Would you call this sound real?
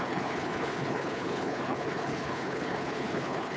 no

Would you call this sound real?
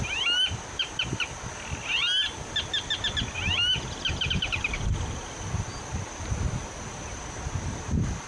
yes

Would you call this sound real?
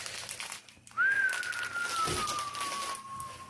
yes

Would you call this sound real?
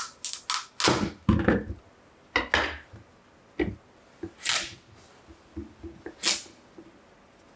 yes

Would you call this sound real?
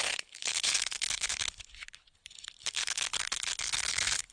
no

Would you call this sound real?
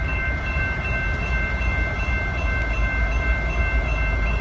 yes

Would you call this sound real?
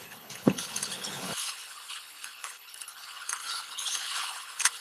no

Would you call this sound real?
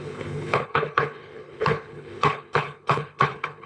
no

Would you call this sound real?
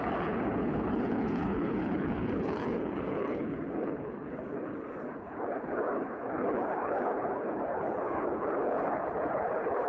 no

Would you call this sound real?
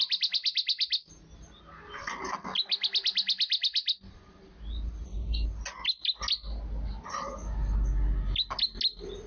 yes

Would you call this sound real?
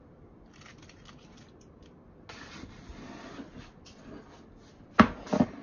yes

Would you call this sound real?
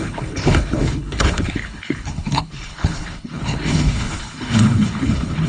no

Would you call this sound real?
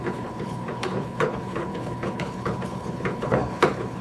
no